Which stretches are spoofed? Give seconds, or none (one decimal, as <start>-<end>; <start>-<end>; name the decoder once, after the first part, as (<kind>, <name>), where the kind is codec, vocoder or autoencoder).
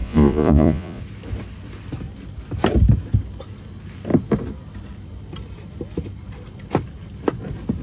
0.0-1.0 (vocoder, Vocos)